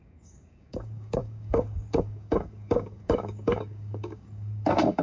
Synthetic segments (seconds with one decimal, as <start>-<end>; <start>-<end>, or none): 0.0-5.0